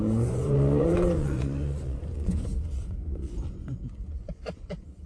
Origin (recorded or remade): remade